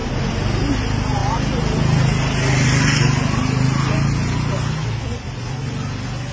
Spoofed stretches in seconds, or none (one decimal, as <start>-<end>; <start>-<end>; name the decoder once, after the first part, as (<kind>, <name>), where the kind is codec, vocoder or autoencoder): none